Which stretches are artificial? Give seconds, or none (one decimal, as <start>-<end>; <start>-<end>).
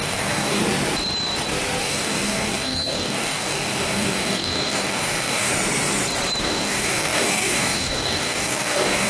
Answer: 0.0-0.6; 1.8-5.5; 6.4-9.1